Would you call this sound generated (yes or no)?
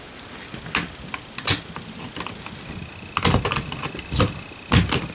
no